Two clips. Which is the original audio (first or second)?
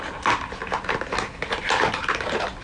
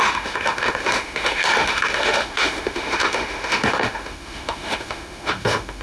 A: first